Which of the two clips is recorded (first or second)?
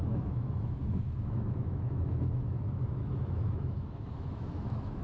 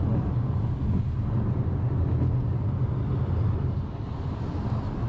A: second